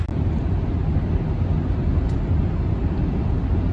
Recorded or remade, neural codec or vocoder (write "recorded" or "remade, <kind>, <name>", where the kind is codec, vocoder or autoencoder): recorded